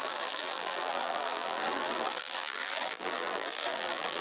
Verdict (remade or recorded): remade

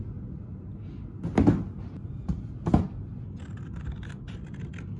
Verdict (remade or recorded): recorded